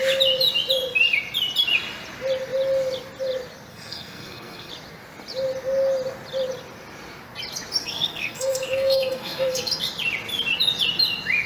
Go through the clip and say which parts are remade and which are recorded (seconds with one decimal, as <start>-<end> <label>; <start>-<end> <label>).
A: 0.0-3.7 recorded; 3.7-4.7 remade; 4.7-7.8 recorded; 7.8-9.7 remade; 9.7-11.5 recorded